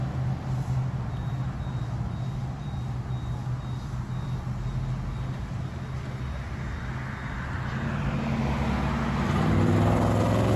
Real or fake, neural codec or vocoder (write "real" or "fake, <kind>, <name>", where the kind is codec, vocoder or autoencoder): real